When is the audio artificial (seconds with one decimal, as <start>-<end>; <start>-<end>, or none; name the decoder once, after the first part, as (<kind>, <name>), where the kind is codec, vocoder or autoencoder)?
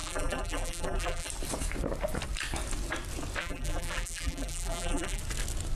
0.0-1.3 (vocoder, BigVGAN v2); 3.4-5.2